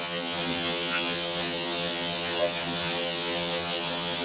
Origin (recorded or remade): remade